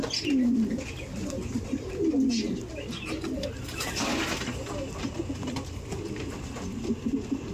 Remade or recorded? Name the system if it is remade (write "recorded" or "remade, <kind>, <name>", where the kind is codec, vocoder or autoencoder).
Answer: recorded